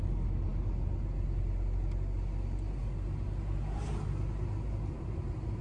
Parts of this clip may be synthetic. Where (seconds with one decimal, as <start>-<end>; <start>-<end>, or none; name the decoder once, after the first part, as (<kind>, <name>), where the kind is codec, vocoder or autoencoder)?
none